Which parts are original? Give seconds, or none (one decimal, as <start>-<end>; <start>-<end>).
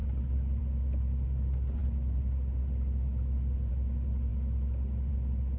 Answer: 0.0-5.6